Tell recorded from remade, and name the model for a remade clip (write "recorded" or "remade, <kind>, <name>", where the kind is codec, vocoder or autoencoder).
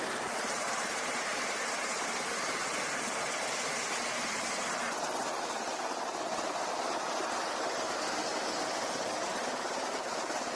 remade, vocoder, BigVGAN v2